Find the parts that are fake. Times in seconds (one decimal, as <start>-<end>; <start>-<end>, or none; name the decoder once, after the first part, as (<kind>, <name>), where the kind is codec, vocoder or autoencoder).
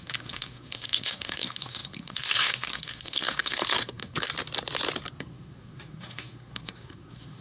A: 0.0-4.3 (codec, SNAC); 5.2-7.4